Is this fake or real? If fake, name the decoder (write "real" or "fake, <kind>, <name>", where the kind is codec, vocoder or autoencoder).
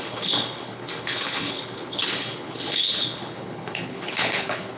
fake, codec, HILCodec